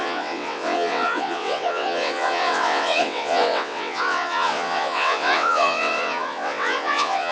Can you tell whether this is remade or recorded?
remade